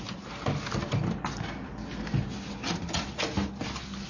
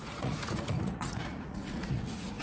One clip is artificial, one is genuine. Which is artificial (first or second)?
second